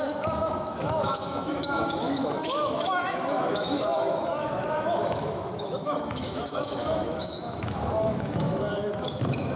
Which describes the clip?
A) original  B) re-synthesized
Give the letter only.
B